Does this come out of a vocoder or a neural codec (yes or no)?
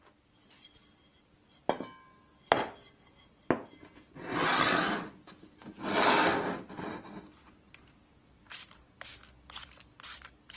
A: no